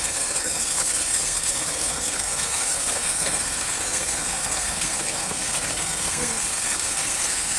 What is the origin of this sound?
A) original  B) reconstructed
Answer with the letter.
B